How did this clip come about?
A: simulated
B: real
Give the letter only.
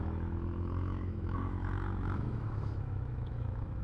A